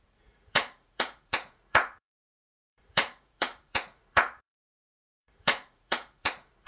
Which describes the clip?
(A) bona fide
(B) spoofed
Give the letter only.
B